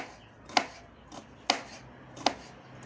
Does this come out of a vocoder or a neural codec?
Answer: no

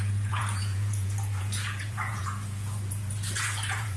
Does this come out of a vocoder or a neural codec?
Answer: yes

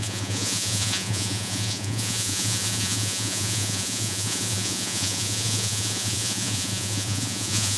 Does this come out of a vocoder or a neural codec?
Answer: yes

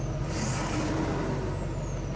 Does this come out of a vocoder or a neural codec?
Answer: no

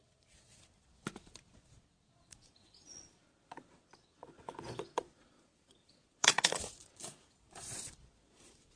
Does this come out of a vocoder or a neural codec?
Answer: yes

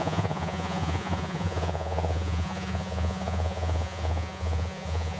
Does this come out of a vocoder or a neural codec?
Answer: yes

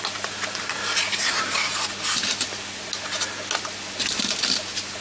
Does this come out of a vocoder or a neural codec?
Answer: no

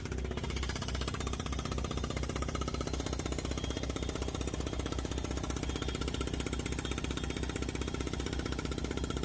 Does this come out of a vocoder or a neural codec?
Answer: no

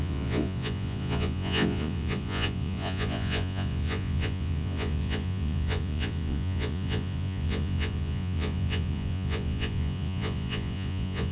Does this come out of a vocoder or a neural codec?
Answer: yes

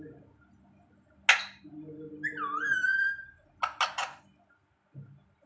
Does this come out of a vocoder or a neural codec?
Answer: no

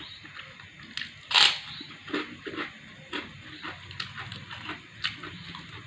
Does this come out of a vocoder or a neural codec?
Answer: no